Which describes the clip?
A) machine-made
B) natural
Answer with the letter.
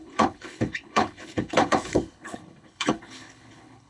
A